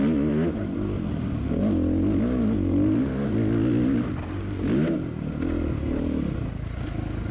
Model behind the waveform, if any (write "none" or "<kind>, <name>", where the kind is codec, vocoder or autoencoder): none